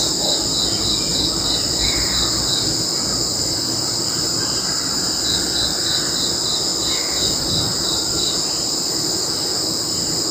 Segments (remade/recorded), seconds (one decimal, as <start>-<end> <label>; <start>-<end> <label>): 0.0-1.1 recorded; 1.1-6.2 remade; 6.2-7.7 recorded; 7.7-8.8 remade; 8.8-10.3 recorded